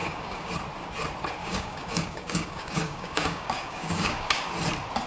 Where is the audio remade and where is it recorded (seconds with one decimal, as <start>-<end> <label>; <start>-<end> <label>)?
0.0-0.5 remade; 0.5-1.4 recorded; 1.4-4.5 remade; 4.5-5.1 recorded

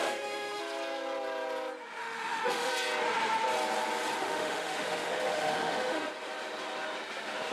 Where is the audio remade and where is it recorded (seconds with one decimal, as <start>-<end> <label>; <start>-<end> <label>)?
0.0-0.6 remade; 0.6-2.0 recorded; 2.0-2.7 remade; 2.7-4.2 recorded; 4.2-6.1 remade; 6.1-7.5 recorded